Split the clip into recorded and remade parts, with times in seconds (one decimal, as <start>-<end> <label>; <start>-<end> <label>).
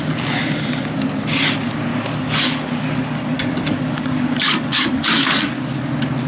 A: 0.0-1.9 recorded; 1.9-5.7 remade; 5.7-6.3 recorded